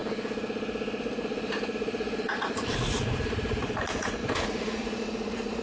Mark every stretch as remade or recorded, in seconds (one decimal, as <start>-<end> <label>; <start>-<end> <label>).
0.0-1.0 recorded; 1.0-5.6 remade